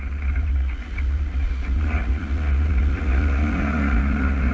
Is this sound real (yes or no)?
no